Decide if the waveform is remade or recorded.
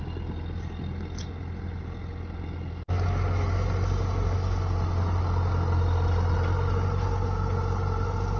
recorded